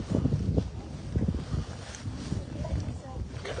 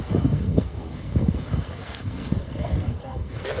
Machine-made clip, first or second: second